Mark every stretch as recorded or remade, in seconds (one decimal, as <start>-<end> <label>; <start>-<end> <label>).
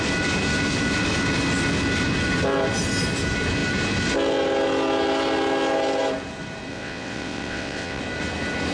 0.0-6.7 recorded; 6.7-8.0 remade; 8.0-8.7 recorded